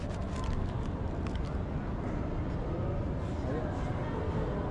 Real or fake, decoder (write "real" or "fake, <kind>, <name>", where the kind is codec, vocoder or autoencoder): real